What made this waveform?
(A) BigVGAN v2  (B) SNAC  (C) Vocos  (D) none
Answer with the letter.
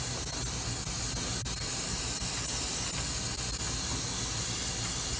D